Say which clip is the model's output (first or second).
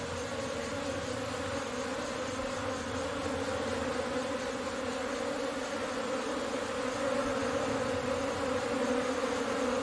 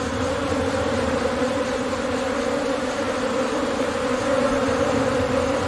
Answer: second